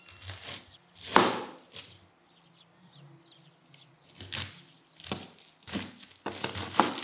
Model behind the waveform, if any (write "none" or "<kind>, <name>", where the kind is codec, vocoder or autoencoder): none